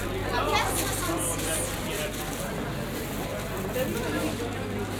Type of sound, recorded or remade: recorded